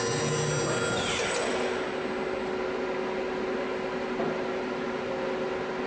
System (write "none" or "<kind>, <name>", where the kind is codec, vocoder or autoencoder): none